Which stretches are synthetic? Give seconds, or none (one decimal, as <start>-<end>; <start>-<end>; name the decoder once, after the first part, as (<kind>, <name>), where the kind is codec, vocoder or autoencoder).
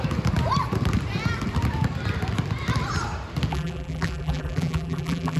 3.5-5.4 (vocoder, BigVGAN v2)